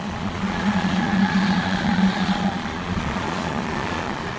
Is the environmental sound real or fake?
fake